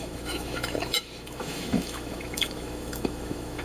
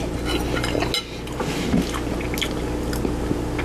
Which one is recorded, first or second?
second